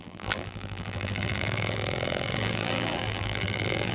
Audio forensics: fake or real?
fake